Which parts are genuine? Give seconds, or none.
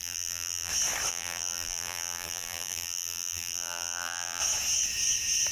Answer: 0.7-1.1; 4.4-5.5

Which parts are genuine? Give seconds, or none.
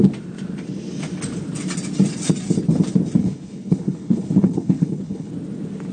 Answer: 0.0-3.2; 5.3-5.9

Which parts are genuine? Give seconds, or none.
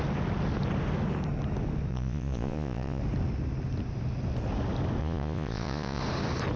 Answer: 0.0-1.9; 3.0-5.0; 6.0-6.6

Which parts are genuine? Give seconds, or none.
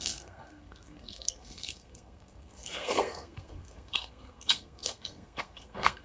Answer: none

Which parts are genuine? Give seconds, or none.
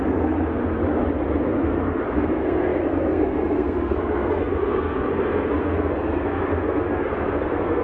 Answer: 0.8-1.4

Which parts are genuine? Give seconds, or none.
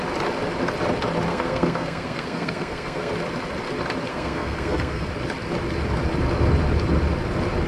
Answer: 0.0-1.3; 3.1-4.1; 5.1-7.7